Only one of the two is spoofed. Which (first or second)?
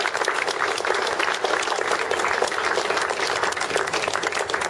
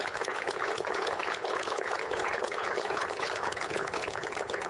second